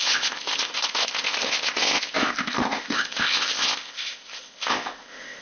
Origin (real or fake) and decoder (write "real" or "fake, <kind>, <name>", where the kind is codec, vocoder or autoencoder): fake, codec, ZipCodec